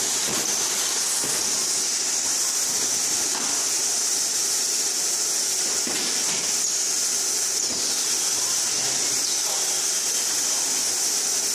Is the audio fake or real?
real